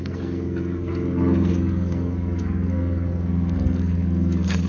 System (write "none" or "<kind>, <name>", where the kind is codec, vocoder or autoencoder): codec, SNAC